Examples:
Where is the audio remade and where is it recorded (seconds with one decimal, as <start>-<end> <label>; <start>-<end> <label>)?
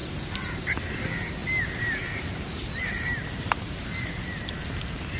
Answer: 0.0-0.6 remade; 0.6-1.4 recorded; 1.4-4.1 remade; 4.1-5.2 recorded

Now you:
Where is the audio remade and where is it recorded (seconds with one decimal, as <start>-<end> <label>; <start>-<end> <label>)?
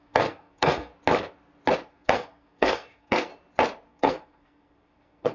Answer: 0.0-0.9 remade; 0.9-1.9 recorded; 1.9-3.3 remade; 3.3-3.9 recorded; 3.9-5.3 remade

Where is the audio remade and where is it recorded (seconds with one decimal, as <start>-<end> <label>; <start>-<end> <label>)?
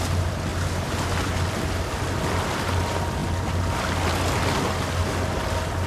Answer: 0.0-5.9 recorded